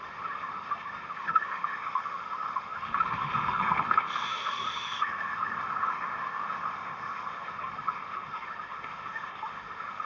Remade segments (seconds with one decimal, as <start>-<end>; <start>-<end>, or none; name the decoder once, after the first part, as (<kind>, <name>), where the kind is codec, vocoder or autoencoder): 0.0-10.1 (autoencoder, DAC-VAE)